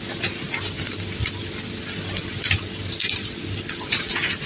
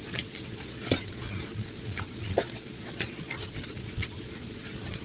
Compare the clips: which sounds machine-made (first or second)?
second